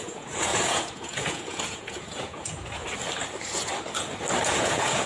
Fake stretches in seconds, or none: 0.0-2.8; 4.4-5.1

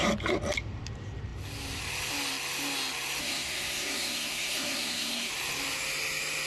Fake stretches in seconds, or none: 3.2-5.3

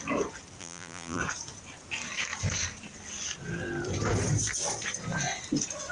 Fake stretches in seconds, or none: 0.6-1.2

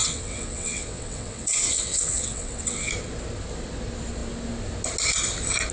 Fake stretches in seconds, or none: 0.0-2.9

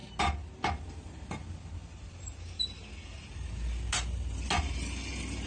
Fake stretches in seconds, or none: none

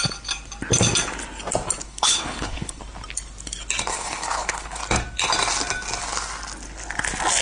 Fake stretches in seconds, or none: 1.8-2.8; 3.9-4.8

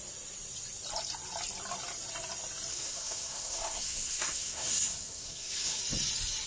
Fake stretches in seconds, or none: 2.7-5.8

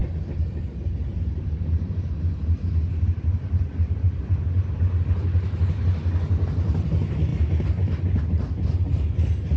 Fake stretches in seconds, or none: none